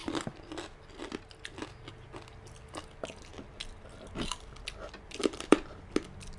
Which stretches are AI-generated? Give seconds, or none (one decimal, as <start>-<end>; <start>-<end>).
5.2-5.9